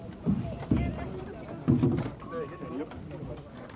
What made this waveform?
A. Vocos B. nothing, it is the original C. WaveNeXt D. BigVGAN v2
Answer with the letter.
B